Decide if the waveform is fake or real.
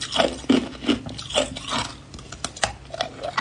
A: real